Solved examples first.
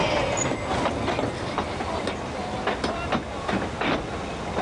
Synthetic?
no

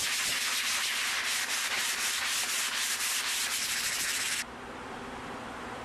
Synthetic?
yes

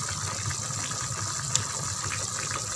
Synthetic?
no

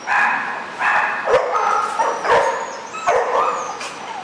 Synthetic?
no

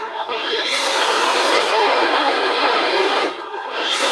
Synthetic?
yes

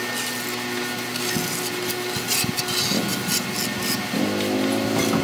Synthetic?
no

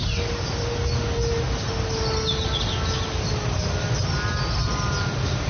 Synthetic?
no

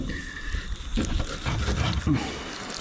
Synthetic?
no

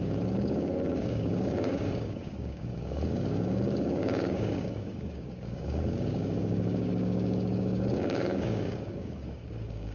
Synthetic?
yes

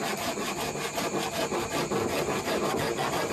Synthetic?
no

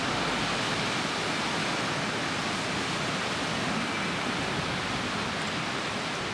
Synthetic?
no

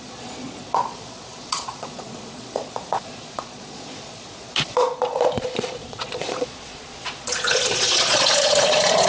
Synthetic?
yes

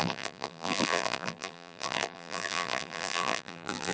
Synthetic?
yes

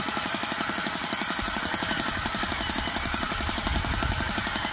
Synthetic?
no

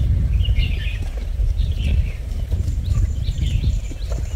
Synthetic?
yes